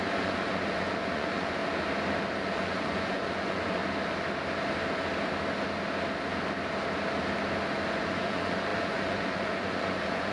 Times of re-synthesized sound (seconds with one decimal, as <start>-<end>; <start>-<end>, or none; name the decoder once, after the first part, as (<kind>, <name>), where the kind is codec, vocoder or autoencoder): 0.0-1.6 (vocoder, Vocos); 2.4-3.8; 7.9-10.3